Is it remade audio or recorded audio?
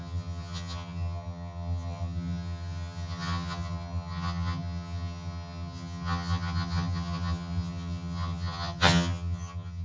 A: remade